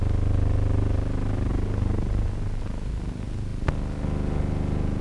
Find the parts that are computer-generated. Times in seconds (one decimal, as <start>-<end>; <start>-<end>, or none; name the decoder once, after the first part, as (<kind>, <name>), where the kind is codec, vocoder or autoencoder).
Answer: none